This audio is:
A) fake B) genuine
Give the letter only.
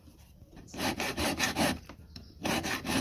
A